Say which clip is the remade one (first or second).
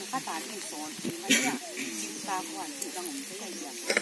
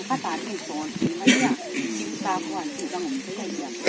second